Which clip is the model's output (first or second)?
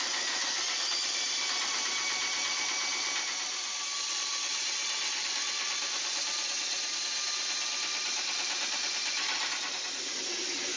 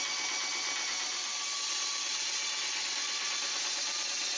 first